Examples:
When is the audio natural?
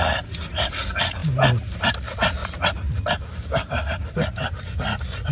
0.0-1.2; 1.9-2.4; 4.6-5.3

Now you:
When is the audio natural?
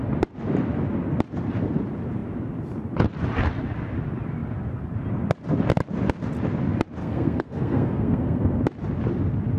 0.0-7.0; 8.6-9.6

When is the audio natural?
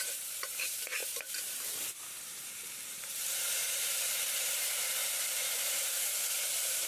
none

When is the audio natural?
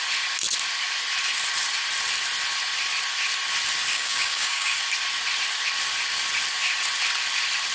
0.0-3.9; 4.8-7.7